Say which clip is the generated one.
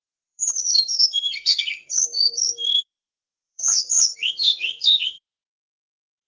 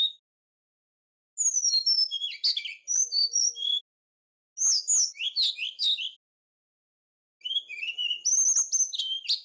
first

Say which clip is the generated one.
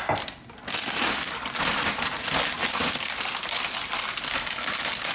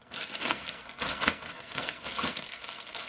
second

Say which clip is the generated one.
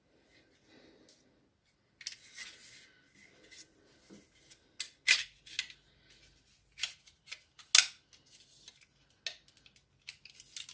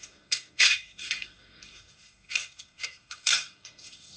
second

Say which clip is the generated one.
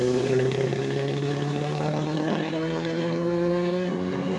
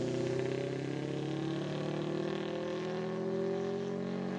first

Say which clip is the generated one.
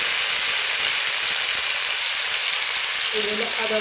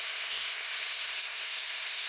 second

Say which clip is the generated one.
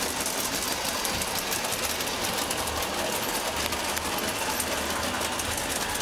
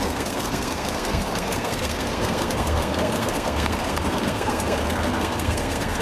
second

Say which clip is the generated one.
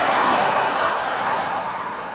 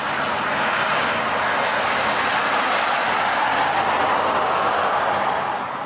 first